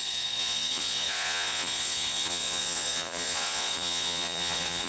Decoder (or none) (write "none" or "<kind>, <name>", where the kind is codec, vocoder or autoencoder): vocoder, Vocos